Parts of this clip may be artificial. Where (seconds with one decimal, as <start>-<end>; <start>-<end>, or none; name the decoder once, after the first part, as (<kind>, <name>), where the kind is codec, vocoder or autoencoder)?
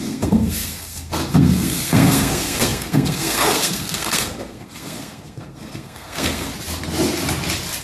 0.0-6.5 (codec, SNAC)